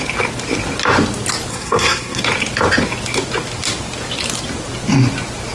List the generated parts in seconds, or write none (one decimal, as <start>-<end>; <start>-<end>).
1.5-2.2